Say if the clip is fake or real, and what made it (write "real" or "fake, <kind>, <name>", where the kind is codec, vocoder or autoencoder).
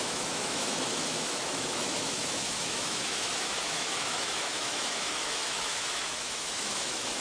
fake, autoencoder, DAC-VAE